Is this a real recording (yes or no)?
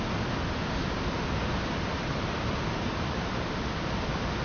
yes